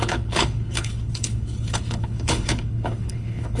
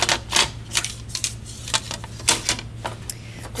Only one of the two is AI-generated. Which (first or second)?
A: first